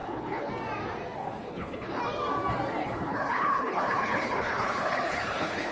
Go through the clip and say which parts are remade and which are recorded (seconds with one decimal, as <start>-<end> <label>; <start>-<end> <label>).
0.0-0.5 remade; 0.5-1.2 recorded; 1.2-2.0 remade; 2.0-2.8 recorded; 2.8-5.7 remade

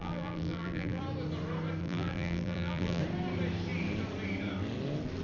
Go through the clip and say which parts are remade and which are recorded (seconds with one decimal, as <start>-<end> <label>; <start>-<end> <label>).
0.0-1.0 remade; 1.0-1.8 recorded; 1.8-3.0 remade; 3.0-5.2 recorded

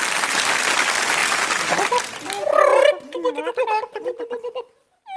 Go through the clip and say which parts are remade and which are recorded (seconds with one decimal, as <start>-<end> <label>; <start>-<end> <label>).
0.0-5.2 recorded

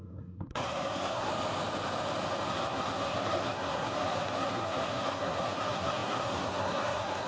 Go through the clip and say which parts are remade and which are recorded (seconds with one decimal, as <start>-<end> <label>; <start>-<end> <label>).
0.0-1.3 remade; 1.3-2.5 recorded; 2.5-7.3 remade

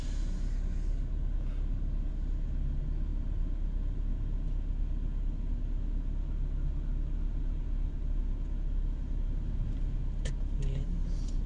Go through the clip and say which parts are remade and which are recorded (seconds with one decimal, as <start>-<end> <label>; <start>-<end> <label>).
0.0-11.5 recorded

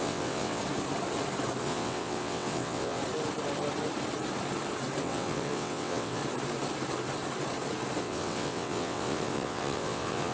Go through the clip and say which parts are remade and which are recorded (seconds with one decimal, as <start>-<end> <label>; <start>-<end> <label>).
0.0-0.6 remade; 0.6-1.6 recorded; 1.6-3.0 remade; 3.0-5.0 recorded; 5.0-6.2 remade; 6.2-8.0 recorded; 8.0-10.3 remade

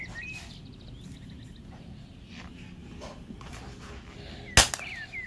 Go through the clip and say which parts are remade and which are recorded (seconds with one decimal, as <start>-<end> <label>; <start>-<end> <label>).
0.0-2.8 recorded; 2.8-3.8 remade; 3.8-5.3 recorded

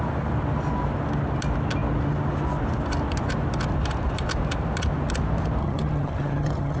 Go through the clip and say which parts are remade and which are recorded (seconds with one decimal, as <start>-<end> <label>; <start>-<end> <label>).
0.0-5.6 recorded; 5.6-6.8 remade